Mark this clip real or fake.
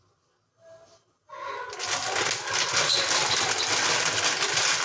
real